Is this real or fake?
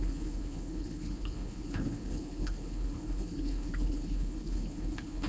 fake